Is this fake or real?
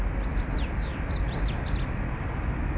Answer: real